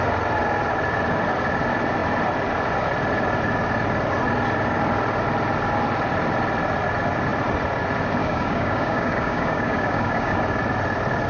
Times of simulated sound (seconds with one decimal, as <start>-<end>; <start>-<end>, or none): 8.2-10.4